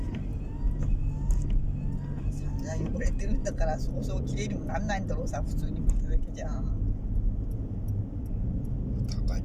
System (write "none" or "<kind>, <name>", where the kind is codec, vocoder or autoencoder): none